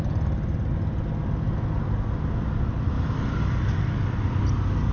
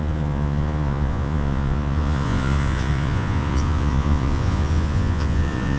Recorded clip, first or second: first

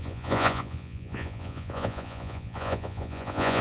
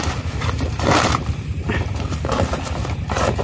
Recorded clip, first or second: second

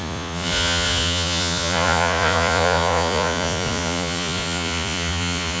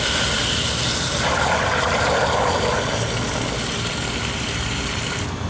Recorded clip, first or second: second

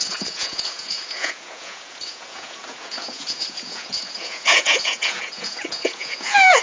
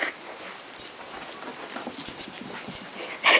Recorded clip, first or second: second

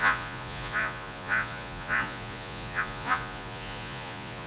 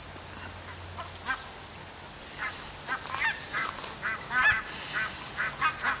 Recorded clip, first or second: second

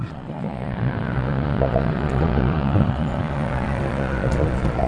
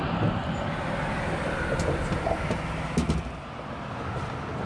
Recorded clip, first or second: second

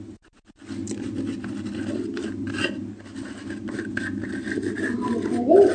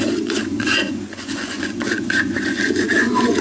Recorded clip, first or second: first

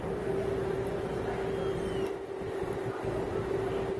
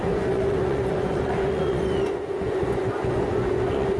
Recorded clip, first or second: first